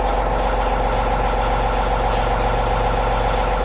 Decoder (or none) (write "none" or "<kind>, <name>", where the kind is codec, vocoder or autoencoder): none